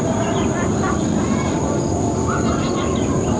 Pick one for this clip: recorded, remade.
recorded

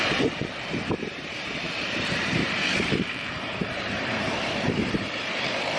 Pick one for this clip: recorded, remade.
remade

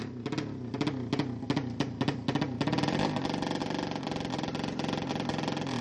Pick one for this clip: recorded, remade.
recorded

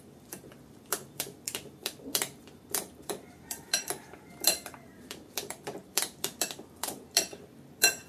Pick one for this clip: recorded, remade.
remade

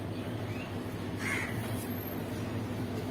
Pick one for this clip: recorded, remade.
recorded